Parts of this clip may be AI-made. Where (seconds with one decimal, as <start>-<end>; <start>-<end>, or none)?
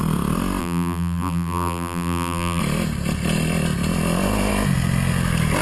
0.6-2.6